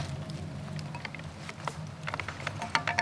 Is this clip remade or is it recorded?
recorded